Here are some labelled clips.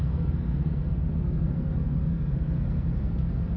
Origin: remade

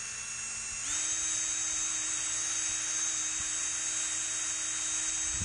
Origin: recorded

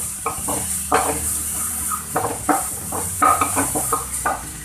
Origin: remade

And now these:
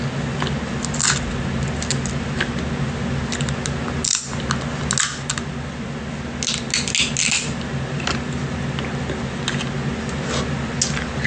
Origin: recorded